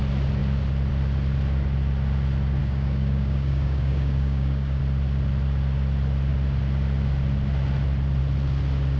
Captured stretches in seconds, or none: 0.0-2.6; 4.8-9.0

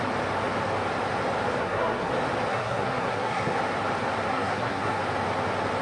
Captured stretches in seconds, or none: 0.0-1.6; 2.1-2.5; 3.6-4.3; 5.0-5.8

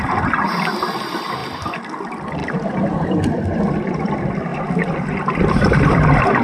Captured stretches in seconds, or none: 0.0-6.4

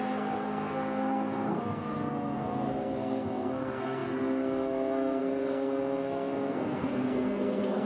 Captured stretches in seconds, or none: none